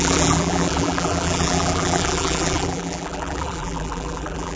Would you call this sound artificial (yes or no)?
yes